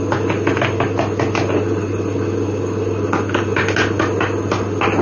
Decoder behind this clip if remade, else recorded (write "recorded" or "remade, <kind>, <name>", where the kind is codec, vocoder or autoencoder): recorded